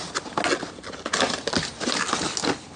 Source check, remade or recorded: recorded